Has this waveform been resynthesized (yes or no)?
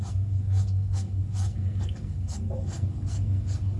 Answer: yes